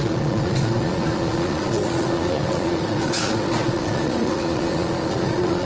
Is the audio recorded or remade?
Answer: remade